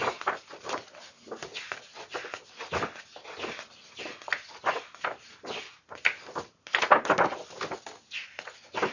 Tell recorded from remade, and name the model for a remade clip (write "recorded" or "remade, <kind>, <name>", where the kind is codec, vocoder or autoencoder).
recorded